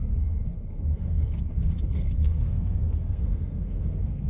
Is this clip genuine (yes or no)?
no